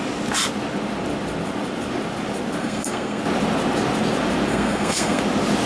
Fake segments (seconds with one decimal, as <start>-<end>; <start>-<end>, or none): 2.6-3.2; 4.5-5.2